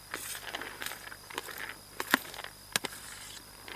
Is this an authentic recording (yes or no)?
yes